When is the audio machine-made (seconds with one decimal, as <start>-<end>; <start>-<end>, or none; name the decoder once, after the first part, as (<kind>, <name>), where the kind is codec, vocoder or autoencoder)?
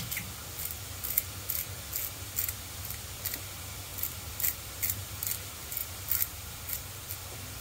3.9-5.1 (vocoder, BigVGAN v2); 5.8-7.1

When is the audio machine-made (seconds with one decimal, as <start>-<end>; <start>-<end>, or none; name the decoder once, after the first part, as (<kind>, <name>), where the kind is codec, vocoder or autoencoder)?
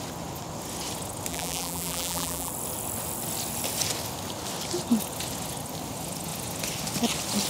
1.3-2.5 (vocoder, BigVGAN v2)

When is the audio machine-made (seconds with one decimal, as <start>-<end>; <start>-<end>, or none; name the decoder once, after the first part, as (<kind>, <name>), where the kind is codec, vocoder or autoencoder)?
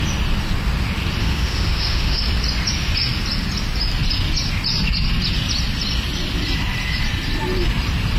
1.2-2.2 (autoencoder, DAC-VAE)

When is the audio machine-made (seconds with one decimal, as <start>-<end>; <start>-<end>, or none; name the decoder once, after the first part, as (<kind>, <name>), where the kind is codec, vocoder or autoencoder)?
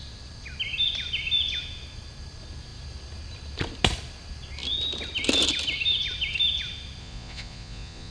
7.0-8.1 (vocoder, Vocos)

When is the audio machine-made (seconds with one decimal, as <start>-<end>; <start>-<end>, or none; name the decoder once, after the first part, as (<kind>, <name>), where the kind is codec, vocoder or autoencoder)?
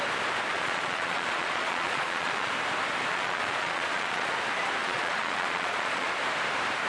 0.5-2.5 (vocoder, Vocos); 3.1-4.3; 4.8-6.1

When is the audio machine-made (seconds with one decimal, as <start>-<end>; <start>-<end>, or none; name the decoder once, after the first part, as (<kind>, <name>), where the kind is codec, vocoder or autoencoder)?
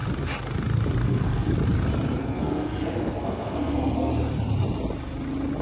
1.0-1.5 (codec, SNAC); 2.2-4.1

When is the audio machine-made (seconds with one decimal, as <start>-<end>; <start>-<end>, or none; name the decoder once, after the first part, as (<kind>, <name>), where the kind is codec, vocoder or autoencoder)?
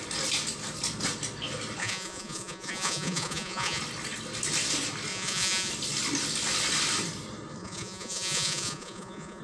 1.8-3.8 (vocoder, Vocos); 5.1-5.7; 7.6-9.4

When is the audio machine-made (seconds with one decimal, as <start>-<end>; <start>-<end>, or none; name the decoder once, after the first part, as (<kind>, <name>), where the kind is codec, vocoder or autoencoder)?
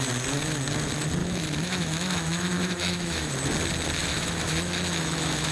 1.2-3.3 (autoencoder, DAC-VAE); 4.0-5.5